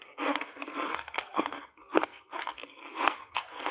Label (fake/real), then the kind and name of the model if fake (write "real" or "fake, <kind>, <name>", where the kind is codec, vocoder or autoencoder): fake, codec, SNAC